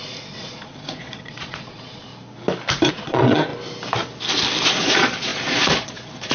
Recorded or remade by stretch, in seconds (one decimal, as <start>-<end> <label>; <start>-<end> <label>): 0.0-2.1 remade; 2.1-2.9 recorded; 2.9-3.5 remade; 3.5-4.7 recorded; 4.7-6.3 remade